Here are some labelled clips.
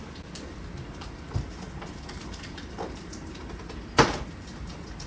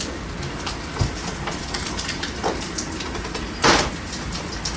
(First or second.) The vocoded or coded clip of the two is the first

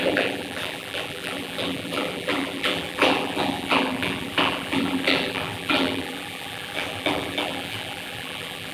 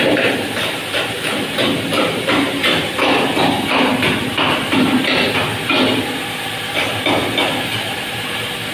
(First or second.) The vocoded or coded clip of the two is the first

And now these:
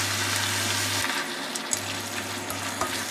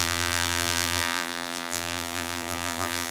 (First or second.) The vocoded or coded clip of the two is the second